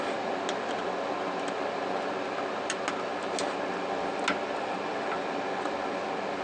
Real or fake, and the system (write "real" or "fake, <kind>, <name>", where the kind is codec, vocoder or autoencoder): real